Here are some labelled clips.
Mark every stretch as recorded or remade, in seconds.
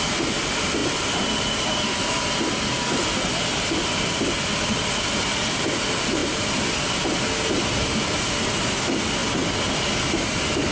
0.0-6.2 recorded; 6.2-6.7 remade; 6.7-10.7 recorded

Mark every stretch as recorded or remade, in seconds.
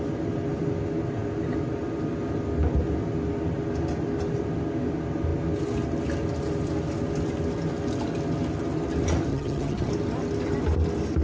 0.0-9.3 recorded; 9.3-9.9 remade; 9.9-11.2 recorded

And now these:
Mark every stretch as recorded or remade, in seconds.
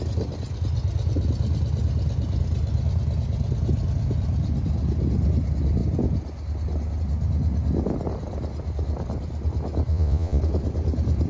0.0-9.9 recorded; 9.9-10.4 remade; 10.4-11.3 recorded